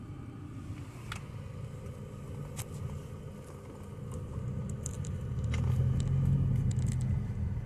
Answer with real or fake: real